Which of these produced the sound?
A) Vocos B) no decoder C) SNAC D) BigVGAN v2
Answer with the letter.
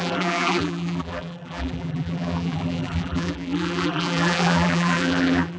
D